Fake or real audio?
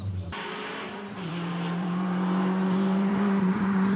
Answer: fake